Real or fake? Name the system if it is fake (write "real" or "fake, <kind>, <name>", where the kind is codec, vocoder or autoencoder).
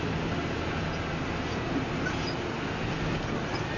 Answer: real